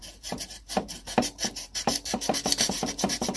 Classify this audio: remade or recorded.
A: remade